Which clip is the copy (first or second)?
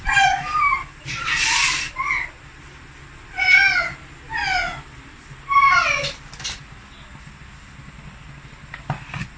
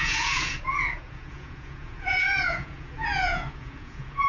second